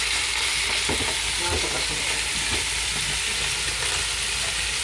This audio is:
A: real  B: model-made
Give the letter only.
A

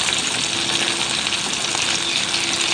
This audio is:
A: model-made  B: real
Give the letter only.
B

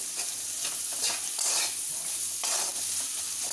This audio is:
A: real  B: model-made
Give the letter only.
A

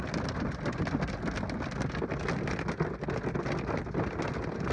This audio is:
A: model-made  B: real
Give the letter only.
B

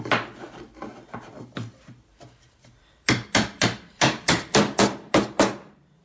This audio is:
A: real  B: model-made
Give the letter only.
B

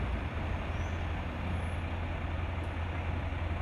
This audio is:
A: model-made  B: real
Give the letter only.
B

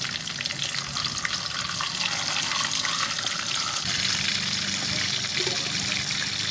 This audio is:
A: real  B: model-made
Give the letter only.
A